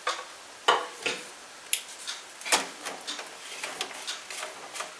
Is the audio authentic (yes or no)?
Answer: yes